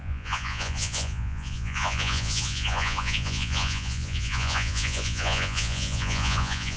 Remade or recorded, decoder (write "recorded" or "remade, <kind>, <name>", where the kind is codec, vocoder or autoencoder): remade, vocoder, Vocos